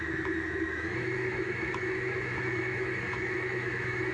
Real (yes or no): no